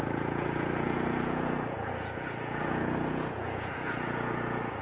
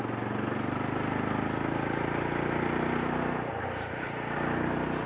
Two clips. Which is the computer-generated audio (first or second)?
first